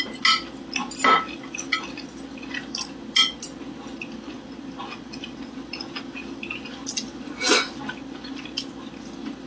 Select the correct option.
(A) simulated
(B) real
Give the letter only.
B